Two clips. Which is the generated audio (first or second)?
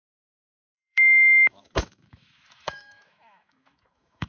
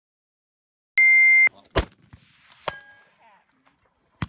first